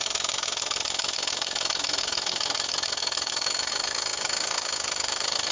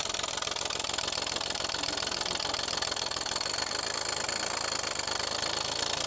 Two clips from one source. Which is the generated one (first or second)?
first